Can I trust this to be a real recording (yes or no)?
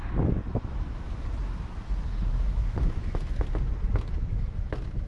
no